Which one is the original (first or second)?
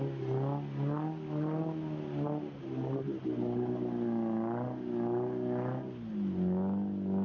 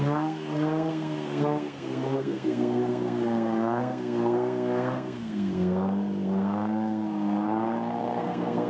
first